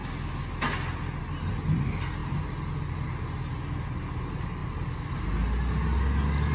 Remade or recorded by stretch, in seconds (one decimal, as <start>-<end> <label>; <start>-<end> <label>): 0.0-6.5 recorded